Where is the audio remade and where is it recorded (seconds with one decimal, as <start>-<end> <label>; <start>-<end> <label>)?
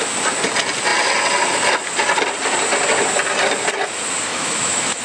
0.0-4.3 recorded; 4.3-5.0 remade